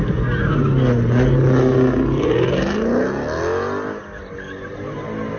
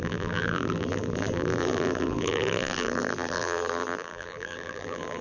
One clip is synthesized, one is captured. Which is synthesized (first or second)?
second